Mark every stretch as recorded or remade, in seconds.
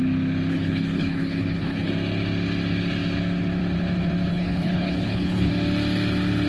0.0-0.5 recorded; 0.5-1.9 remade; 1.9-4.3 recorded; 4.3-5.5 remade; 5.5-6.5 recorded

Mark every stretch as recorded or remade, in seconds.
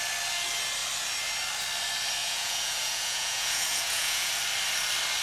0.0-2.2 recorded; 2.2-4.3 remade; 4.3-5.2 recorded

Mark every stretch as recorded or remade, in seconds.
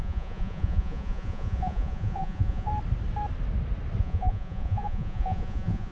0.0-2.7 remade; 2.7-4.0 recorded; 4.0-5.9 remade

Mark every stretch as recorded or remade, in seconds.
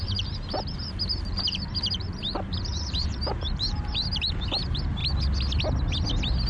0.0-5.0 remade; 5.0-6.5 recorded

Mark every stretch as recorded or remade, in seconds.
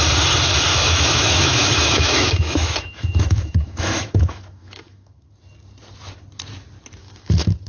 0.0-0.7 recorded; 0.7-5.3 remade; 5.3-7.0 recorded; 7.0-7.7 remade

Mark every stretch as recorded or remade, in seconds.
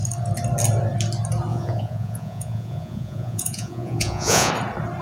0.0-1.5 recorded; 1.5-4.5 remade; 4.5-5.0 recorded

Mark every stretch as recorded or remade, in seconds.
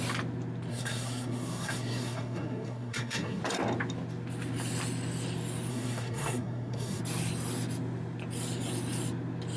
0.0-0.7 recorded; 0.7-3.4 remade; 3.4-5.7 recorded; 5.7-7.0 remade; 7.0-9.6 recorded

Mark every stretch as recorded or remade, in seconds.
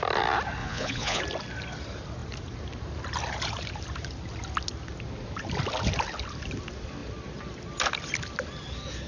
0.0-0.6 recorded; 0.6-1.2 remade; 1.2-9.1 recorded